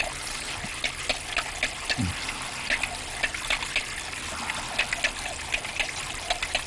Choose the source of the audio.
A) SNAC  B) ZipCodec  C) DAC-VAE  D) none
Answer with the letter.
D